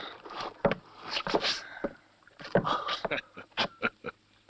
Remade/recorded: recorded